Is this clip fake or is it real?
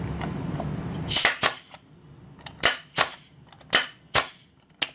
real